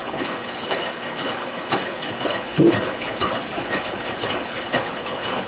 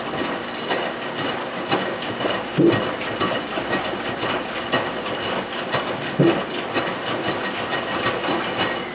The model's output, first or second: first